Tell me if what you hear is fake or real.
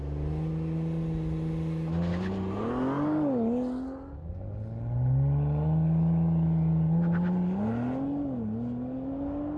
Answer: real